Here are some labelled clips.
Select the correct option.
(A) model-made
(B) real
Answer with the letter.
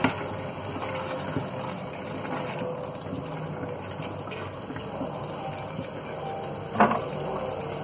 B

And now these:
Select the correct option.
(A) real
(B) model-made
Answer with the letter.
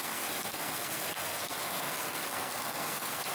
B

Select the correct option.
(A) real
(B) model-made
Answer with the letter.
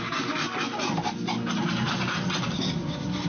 A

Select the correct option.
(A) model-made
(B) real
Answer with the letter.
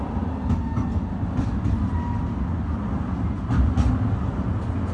B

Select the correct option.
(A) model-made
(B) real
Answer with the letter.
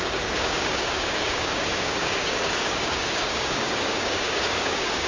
A